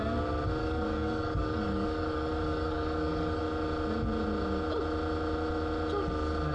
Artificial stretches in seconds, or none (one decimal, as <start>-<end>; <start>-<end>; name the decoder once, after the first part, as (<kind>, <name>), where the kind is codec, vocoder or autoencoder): 0.6-3.4 (codec, DAC)